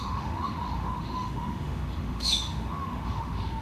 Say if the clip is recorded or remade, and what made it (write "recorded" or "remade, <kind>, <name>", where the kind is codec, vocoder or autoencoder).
remade, autoencoder, DAC-VAE